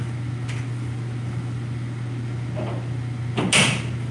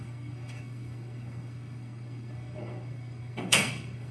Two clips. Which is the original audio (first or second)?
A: first